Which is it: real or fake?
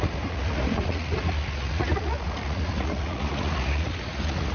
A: fake